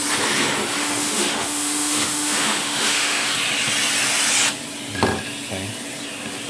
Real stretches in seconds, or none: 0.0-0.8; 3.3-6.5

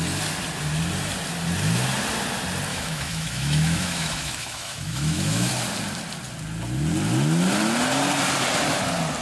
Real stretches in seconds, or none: 0.0-2.7; 5.5-9.2

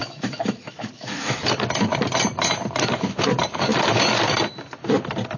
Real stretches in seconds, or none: 1.4-5.4

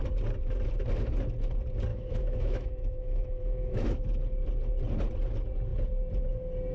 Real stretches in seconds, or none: 0.0-1.9; 4.0-6.7

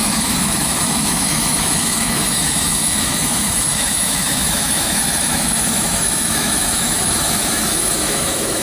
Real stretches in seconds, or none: none